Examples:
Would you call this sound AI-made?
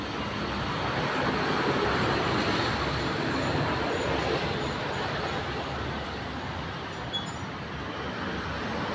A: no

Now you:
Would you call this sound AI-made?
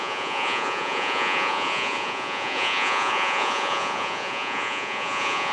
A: yes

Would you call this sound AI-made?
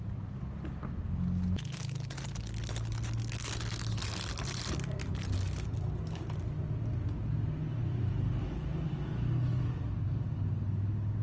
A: no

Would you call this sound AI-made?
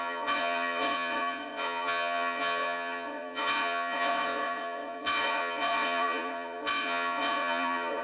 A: yes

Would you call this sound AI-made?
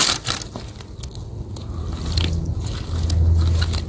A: no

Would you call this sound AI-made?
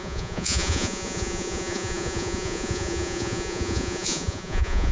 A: yes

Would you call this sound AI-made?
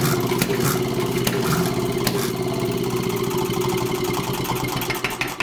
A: no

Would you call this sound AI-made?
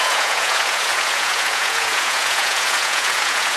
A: yes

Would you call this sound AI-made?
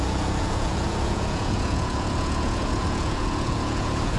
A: yes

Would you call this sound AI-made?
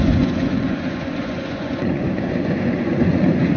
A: yes